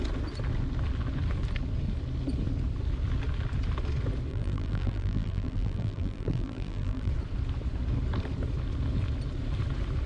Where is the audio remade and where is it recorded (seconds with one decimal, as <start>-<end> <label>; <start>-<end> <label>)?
0.0-4.3 recorded; 4.3-7.1 remade; 7.1-10.1 recorded